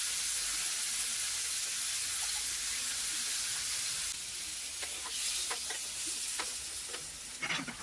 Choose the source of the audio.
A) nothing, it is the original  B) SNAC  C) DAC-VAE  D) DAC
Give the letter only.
A